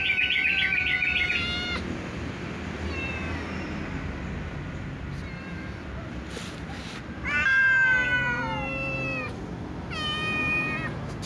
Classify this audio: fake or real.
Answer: real